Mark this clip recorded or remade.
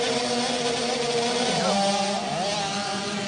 recorded